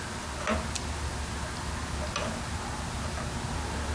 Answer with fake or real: real